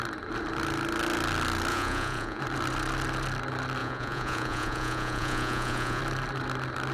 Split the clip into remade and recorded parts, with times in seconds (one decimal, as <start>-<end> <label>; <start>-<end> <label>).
0.0-1.7 recorded; 1.7-2.4 remade; 2.4-3.8 recorded; 3.8-6.0 remade; 6.0-6.9 recorded